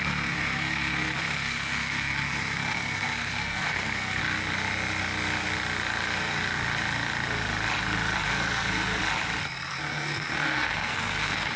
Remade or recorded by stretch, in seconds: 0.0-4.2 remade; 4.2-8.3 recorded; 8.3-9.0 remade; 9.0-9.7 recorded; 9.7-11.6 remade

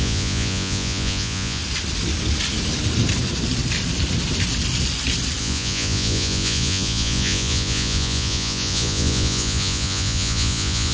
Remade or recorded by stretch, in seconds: 0.0-1.6 remade; 1.6-5.4 recorded; 5.4-10.9 remade

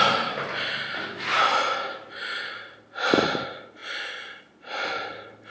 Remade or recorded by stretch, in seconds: 0.0-5.5 recorded

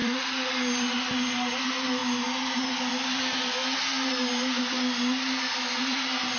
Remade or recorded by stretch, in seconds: 0.0-0.5 remade; 0.5-6.4 recorded

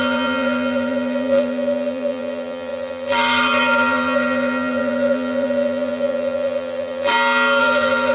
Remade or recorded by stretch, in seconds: 0.0-7.1 remade; 7.1-7.6 recorded; 7.6-8.1 remade

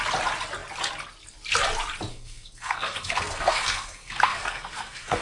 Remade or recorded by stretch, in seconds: 0.0-2.1 recorded; 2.1-5.2 remade

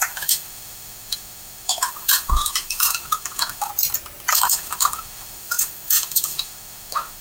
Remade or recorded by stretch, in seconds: 0.0-3.7 remade; 3.7-4.3 recorded; 4.3-7.2 remade